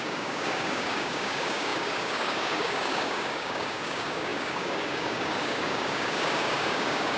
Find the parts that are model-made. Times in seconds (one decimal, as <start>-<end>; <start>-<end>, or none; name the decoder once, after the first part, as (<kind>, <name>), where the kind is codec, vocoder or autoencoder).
0.0-7.2 (codec, DAC)